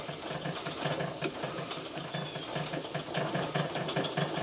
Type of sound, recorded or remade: recorded